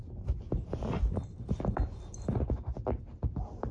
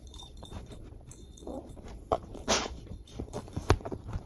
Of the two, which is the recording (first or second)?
first